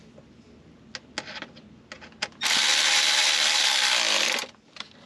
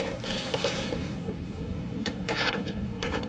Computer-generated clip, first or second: second